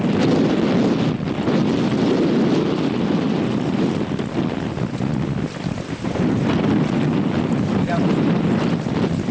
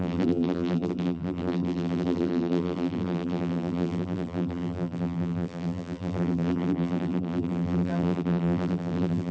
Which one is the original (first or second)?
first